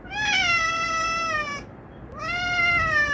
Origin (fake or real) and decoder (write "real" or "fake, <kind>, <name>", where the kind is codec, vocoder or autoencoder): real